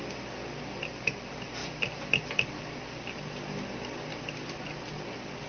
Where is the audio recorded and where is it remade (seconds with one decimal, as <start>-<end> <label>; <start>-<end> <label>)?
0.0-5.5 recorded